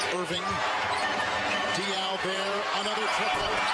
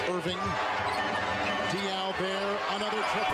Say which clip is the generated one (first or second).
first